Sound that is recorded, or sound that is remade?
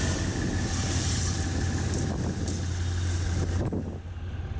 recorded